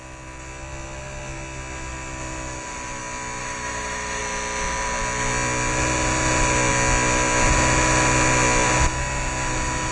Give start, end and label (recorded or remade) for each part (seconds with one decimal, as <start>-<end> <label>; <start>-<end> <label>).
0.0-3.4 recorded; 3.4-4.2 remade; 4.2-9.9 recorded